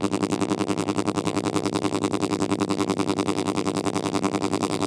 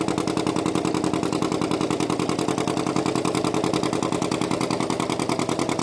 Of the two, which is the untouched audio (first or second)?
second